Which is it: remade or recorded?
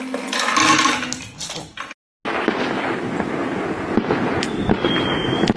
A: recorded